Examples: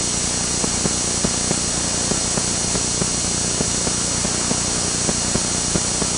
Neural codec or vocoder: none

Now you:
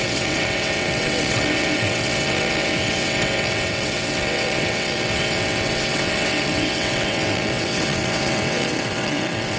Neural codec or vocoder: vocoder, WaveNeXt